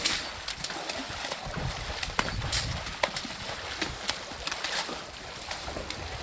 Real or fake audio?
real